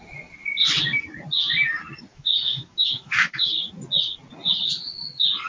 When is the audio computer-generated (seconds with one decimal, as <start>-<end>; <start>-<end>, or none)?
2.1-3.5